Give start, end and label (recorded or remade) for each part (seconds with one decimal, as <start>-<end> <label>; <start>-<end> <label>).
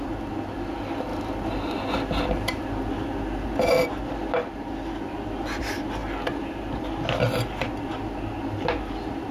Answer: 0.0-9.3 recorded